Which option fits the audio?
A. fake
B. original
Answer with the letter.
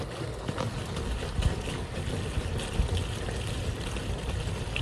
B